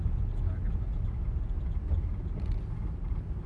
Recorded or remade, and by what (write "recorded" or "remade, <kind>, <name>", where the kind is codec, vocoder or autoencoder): recorded